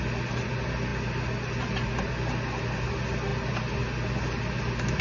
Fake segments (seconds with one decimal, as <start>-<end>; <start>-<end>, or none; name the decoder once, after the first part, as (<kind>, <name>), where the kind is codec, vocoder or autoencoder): none